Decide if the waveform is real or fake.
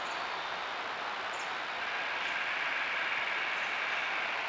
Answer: real